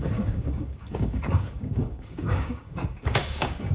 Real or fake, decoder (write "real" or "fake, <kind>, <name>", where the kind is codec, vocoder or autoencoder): fake, codec, DAC